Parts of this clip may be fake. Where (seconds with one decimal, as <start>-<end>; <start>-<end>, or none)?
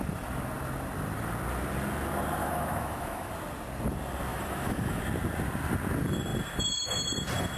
2.4-3.3; 4.3-5.0